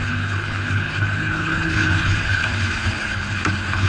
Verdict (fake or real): fake